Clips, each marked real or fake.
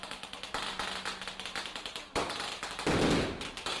real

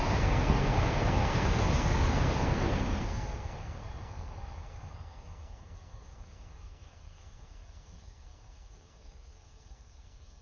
fake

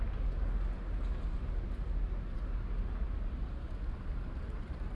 real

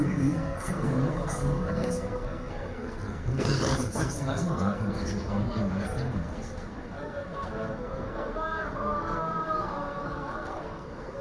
fake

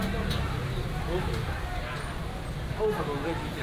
real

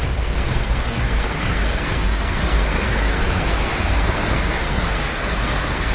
fake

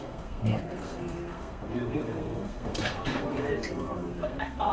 fake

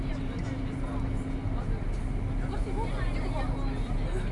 real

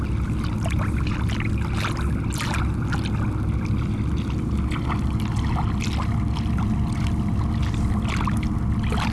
real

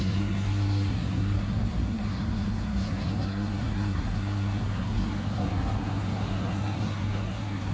fake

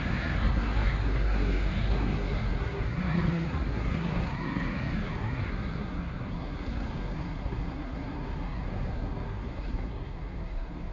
fake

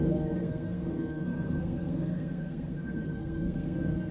fake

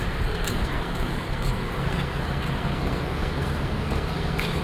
fake